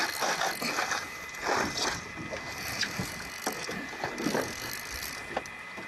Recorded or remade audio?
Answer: recorded